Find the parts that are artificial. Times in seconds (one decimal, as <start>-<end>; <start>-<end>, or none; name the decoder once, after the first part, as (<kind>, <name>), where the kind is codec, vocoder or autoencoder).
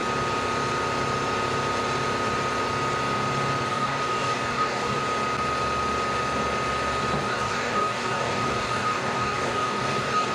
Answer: 3.7-5.0 (codec, DAC); 7.2-10.3